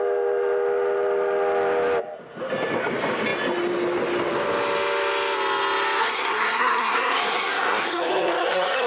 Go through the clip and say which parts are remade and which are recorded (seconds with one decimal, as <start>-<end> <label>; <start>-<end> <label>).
0.0-6.0 recorded; 6.0-8.9 remade